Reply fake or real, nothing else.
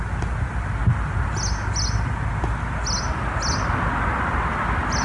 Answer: real